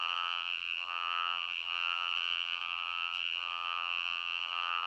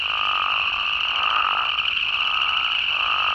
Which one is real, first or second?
second